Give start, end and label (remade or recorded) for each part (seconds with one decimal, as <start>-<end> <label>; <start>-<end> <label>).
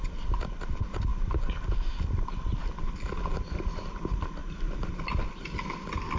0.0-4.4 recorded; 4.4-5.0 remade; 5.0-6.2 recorded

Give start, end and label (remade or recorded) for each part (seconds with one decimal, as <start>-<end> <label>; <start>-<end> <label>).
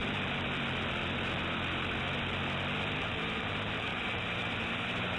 0.0-3.0 recorded; 3.0-5.2 remade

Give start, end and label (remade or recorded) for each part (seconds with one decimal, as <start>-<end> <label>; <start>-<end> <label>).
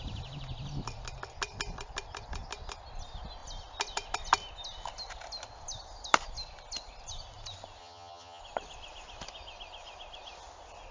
0.0-7.8 recorded; 7.8-8.4 remade; 8.4-10.9 recorded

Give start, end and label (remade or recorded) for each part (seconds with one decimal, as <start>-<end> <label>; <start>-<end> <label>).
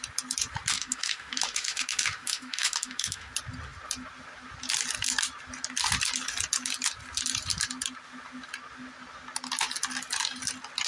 0.0-0.7 recorded; 0.7-3.3 remade; 3.3-10.9 recorded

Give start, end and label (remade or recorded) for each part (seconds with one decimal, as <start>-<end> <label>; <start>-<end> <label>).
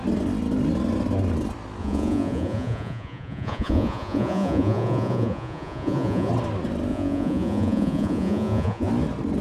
0.0-1.8 recorded; 1.8-6.3 remade; 6.3-6.9 recorded; 6.9-8.9 remade; 8.9-9.4 recorded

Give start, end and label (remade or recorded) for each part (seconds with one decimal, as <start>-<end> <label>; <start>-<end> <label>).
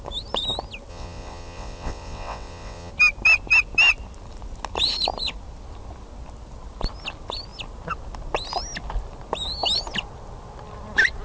0.0-0.9 recorded; 0.9-2.9 remade; 2.9-11.2 recorded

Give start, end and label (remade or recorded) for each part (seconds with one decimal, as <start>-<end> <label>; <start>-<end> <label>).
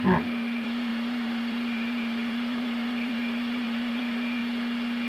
0.0-4.4 remade; 4.4-5.1 recorded